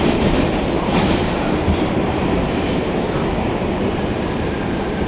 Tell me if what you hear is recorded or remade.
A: remade